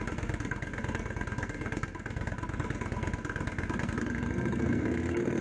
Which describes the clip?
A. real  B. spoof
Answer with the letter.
B